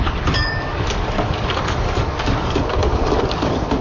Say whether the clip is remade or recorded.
remade